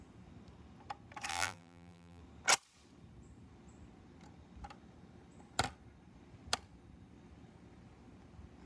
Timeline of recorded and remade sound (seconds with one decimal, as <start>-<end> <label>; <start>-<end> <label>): 0.0-1.3 recorded; 1.3-2.2 remade; 2.2-8.7 recorded